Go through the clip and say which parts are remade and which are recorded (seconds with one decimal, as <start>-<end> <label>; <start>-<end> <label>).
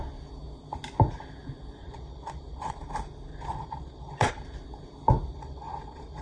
0.0-1.8 recorded; 1.8-2.8 remade; 2.8-3.3 recorded; 3.3-4.3 remade; 4.3-5.3 recorded; 5.3-6.2 remade